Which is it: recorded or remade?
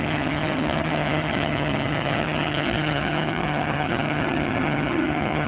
remade